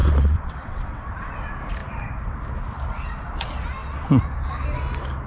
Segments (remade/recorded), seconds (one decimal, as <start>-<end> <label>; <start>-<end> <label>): 0.0-1.1 remade; 1.1-5.3 recorded